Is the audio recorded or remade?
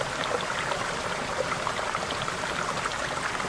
recorded